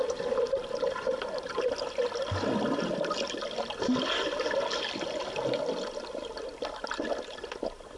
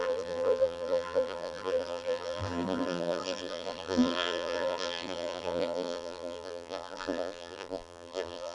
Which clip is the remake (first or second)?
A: second